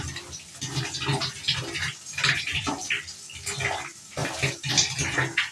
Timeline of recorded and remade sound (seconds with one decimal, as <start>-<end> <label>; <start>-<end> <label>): 0.0-4.2 recorded; 4.2-4.7 remade; 4.7-5.5 recorded